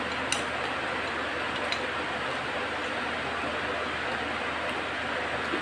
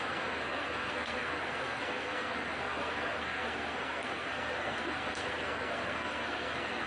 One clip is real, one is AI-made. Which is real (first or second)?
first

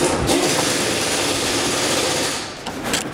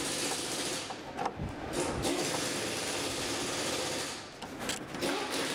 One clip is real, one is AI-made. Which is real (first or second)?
second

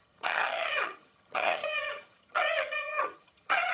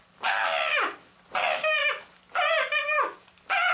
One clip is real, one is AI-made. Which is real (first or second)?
second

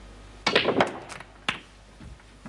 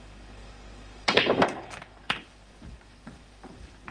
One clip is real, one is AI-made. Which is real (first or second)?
first